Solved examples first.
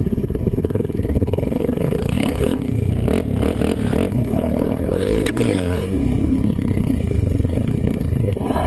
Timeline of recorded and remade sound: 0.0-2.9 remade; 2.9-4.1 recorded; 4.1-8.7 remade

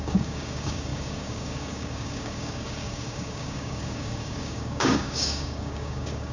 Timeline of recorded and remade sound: 0.0-6.3 remade

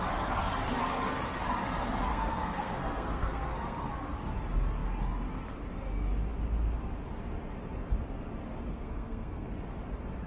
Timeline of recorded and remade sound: 0.0-2.1 recorded; 2.1-3.9 remade; 3.9-8.7 recorded; 8.7-9.5 remade; 9.5-10.3 recorded

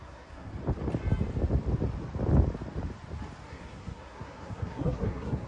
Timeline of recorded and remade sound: 0.0-0.5 remade; 0.5-3.5 recorded; 3.5-5.5 remade